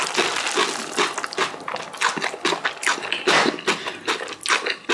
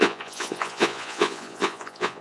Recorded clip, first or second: first